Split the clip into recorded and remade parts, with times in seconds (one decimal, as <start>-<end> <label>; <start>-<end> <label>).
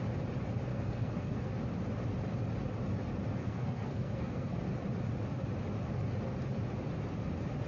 0.0-0.7 recorded; 0.7-1.5 remade; 1.5-3.4 recorded; 3.4-4.6 remade; 4.6-7.7 recorded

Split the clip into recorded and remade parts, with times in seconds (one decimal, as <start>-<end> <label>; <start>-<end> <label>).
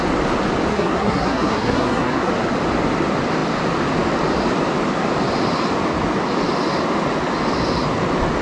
0.0-0.7 recorded; 0.7-2.3 remade; 2.3-8.4 recorded